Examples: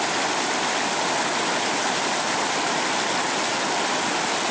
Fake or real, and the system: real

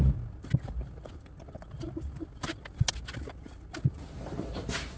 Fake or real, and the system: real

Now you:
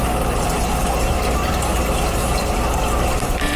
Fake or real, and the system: real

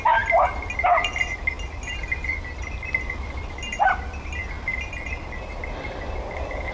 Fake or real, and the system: real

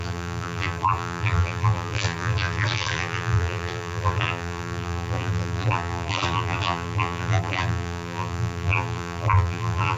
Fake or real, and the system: fake, vocoder, BigVGAN v2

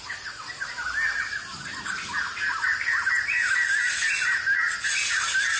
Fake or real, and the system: real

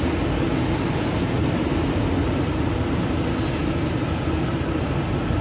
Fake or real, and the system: real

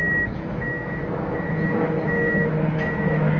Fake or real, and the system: fake, autoencoder, DAC-VAE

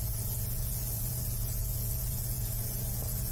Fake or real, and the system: fake, vocoder, Vocos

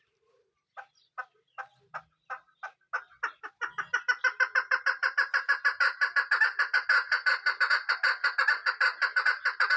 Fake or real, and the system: real